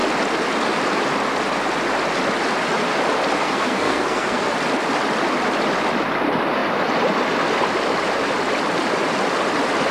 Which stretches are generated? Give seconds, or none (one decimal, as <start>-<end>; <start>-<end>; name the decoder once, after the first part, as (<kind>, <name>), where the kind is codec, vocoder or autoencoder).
3.4-4.5 (codec, SNAC)